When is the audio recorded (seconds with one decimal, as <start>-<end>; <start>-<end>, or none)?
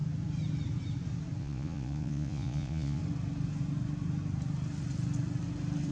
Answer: 0.0-1.4; 3.0-5.9